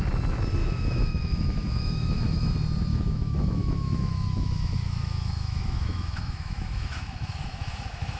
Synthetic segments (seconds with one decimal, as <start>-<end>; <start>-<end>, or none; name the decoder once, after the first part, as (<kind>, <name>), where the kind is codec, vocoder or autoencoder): 0.6-2.5 (autoencoder, DAC-VAE); 2.9-8.2